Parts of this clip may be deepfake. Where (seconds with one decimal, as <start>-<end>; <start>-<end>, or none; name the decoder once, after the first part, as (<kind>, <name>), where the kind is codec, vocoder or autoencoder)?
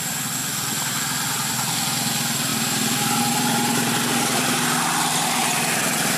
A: none